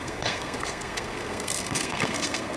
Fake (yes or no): yes